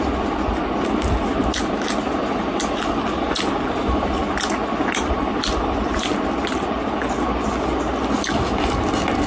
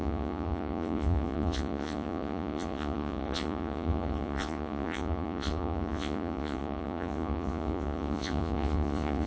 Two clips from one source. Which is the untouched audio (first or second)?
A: first